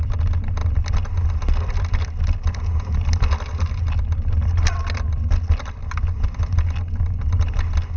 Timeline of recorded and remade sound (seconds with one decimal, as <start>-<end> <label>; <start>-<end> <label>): 0.0-8.0 recorded